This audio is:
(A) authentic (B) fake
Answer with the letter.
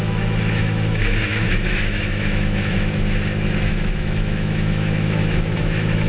B